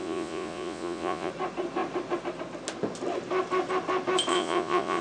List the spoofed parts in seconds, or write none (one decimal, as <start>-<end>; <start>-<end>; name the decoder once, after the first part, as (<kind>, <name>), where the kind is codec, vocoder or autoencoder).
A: 0.0-1.3 (vocoder, Vocos); 4.3-5.0